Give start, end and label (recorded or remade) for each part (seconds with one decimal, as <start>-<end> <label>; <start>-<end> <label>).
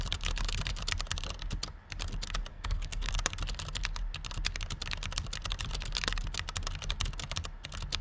0.0-2.5 recorded; 2.5-3.1 remade; 3.1-8.0 recorded